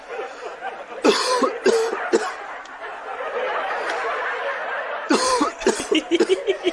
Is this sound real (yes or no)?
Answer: yes